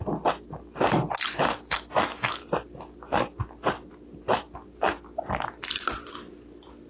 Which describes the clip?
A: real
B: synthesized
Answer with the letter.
A